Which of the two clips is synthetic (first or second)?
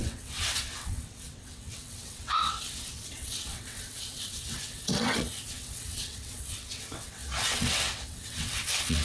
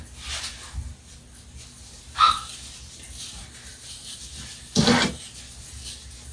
first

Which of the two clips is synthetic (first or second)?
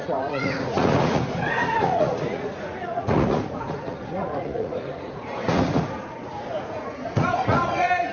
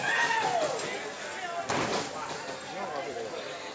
first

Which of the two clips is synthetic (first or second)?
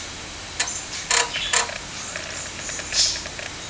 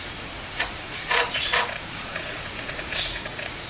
second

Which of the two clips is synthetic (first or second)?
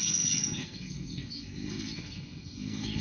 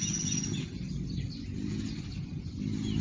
first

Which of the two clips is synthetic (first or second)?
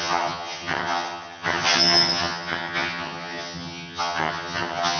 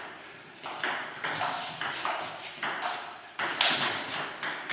first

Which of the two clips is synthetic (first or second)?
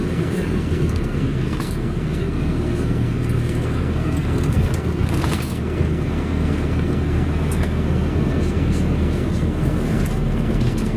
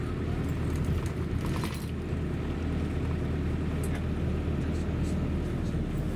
first